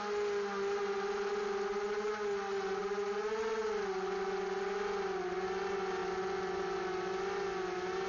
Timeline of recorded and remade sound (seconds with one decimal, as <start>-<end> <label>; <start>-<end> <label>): 0.0-8.1 recorded